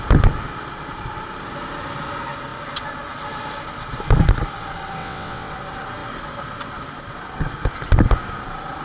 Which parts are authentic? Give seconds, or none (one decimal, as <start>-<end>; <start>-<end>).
0.0-5.0; 5.5-8.8